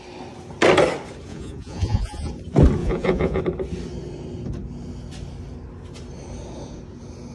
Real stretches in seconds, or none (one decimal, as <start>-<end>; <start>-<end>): 0.0-1.3; 2.3-2.8; 3.4-7.3